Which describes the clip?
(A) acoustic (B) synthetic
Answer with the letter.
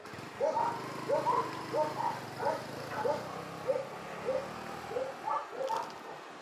A